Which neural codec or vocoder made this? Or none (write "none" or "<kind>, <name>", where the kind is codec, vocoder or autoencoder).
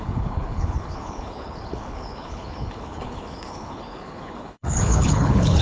codec, HILCodec